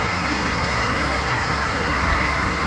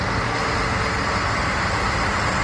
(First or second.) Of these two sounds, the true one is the second